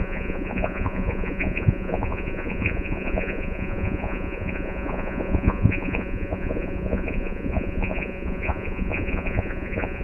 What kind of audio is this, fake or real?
fake